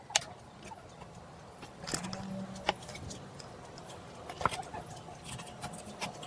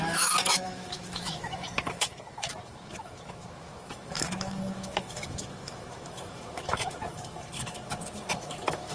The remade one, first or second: second